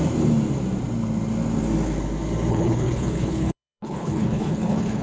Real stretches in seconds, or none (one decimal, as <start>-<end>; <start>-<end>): 0.0-2.5